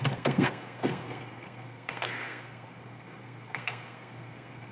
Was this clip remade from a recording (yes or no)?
yes